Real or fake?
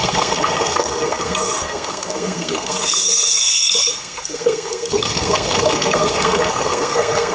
fake